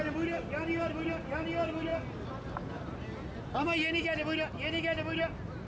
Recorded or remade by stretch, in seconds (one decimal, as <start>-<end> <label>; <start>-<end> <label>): 0.0-5.7 recorded